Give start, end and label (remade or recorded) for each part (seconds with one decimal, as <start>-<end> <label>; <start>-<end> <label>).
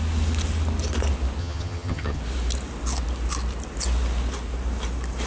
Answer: 0.0-1.4 recorded; 1.4-2.2 remade; 2.2-5.3 recorded